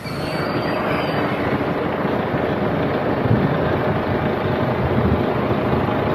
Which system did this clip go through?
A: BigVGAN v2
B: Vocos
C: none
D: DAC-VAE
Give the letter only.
C